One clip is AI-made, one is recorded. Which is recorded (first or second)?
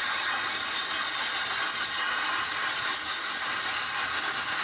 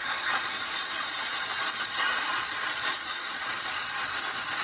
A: first